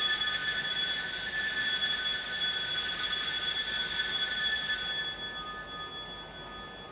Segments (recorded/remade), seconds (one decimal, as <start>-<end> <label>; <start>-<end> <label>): 0.0-6.9 recorded